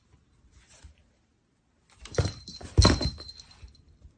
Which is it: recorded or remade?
recorded